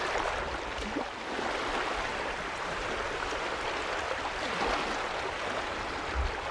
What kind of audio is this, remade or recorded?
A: recorded